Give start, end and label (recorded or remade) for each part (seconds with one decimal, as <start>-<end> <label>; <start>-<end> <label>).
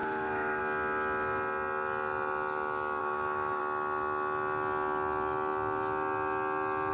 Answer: 0.0-0.6 remade; 0.6-3.0 recorded; 3.0-3.6 remade; 3.6-6.9 recorded